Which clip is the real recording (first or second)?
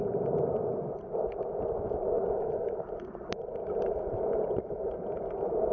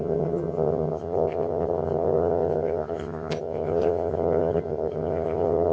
first